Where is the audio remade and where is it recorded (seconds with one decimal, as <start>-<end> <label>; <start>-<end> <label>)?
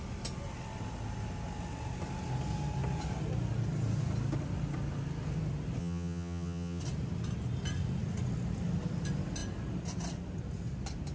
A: 0.0-5.8 recorded; 5.8-6.8 remade; 6.8-11.1 recorded